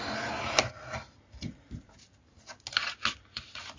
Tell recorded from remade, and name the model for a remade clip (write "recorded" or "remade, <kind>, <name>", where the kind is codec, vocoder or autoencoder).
recorded